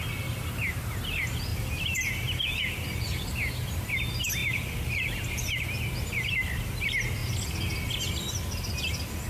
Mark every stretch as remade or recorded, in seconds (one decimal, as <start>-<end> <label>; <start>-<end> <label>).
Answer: 0.0-1.5 recorded; 1.5-3.2 remade; 3.2-9.3 recorded